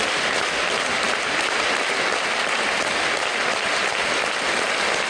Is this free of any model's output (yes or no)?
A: yes